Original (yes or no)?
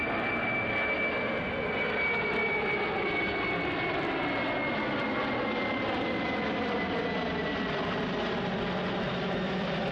yes